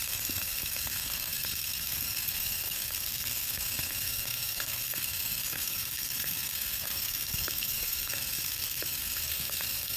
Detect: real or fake fake